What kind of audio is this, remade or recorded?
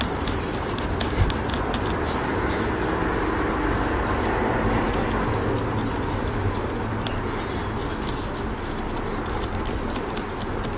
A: recorded